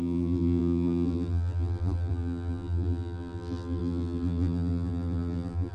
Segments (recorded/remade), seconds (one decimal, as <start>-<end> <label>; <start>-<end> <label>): 0.0-5.7 remade